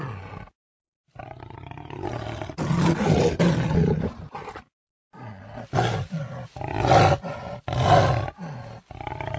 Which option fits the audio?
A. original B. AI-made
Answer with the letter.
A